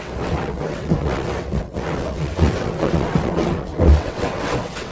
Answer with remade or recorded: remade